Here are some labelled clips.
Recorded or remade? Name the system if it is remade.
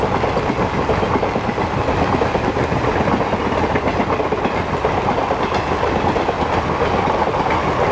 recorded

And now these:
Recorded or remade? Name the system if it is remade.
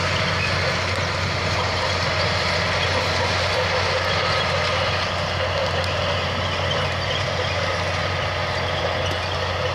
recorded